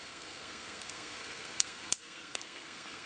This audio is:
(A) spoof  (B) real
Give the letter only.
A